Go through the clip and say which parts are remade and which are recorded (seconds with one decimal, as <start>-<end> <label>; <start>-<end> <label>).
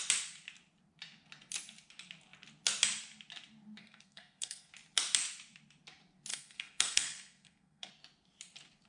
0.0-3.8 recorded; 3.8-4.7 remade; 4.7-6.3 recorded; 6.3-7.9 remade; 7.9-8.9 recorded